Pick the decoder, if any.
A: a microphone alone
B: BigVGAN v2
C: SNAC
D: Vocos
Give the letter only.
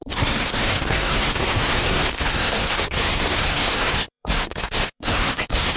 C